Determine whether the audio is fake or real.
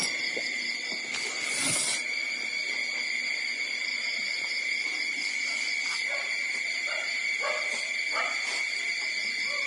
fake